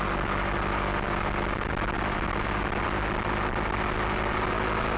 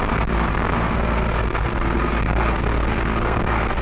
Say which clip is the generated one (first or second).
second